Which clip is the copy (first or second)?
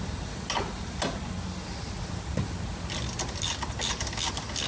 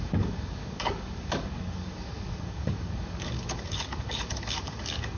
second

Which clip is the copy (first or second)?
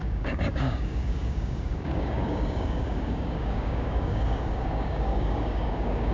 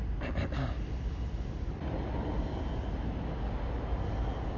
first